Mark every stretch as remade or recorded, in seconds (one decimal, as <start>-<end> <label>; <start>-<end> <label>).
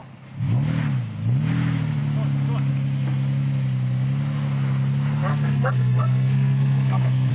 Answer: 0.0-5.3 recorded; 5.3-7.3 remade